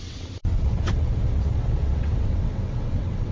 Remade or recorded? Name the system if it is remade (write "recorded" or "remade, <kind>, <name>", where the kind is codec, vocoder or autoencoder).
remade, vocoder, WaveNeXt